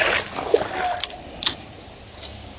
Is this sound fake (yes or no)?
no